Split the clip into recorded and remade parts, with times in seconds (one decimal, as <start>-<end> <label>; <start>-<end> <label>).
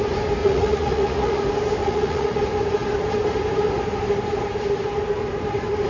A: 0.0-0.4 recorded; 0.4-1.4 remade; 1.4-1.8 recorded; 1.8-2.4 remade; 2.4-5.9 recorded